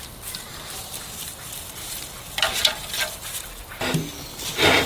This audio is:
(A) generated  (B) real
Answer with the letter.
B